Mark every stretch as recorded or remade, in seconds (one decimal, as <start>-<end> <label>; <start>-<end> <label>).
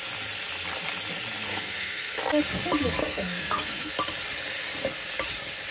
0.0-1.5 recorded; 1.5-2.2 remade; 2.2-3.0 recorded; 3.0-3.9 remade; 3.9-5.7 recorded